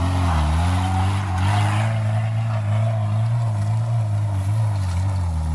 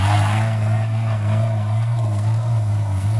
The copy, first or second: second